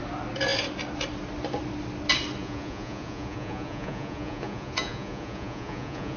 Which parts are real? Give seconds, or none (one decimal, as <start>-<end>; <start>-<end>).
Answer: 0.0-2.4

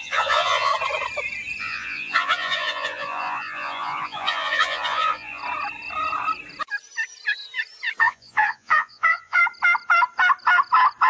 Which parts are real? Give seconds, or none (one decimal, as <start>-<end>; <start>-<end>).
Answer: 0.7-1.6; 5.4-8.0; 9.4-11.1